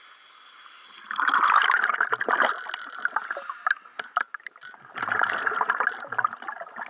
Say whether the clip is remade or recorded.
recorded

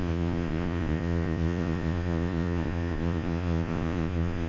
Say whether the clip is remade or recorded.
remade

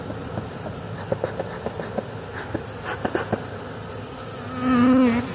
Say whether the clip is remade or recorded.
recorded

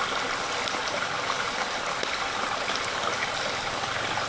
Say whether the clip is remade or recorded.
recorded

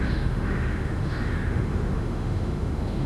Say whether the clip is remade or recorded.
remade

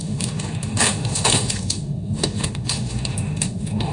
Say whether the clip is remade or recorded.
remade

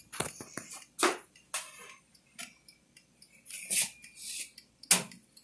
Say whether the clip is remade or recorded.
recorded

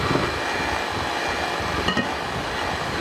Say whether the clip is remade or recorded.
recorded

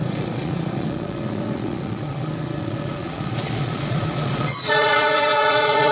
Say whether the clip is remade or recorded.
remade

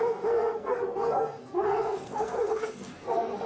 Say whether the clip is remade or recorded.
remade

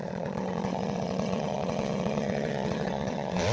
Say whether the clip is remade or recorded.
remade